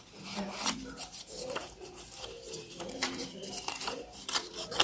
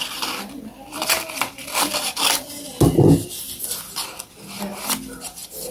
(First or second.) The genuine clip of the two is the second